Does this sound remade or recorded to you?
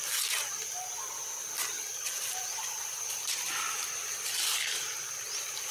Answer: recorded